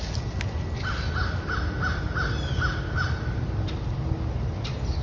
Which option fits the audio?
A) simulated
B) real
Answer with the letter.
B